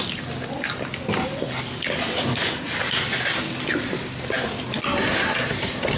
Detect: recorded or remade recorded